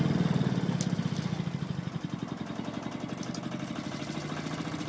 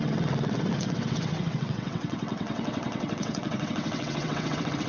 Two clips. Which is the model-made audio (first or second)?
second